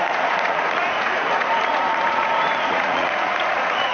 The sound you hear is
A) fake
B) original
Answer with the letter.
A